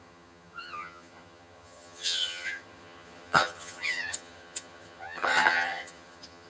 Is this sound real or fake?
fake